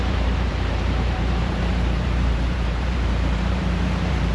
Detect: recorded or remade remade